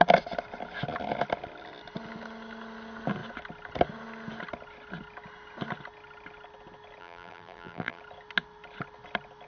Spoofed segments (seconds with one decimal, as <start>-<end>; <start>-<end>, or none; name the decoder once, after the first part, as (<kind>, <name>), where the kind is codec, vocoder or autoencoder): 7.0-8.0 (vocoder, BigVGAN v2)